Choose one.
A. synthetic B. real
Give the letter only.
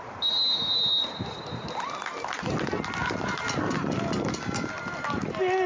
B